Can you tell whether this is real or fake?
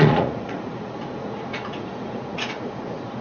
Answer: fake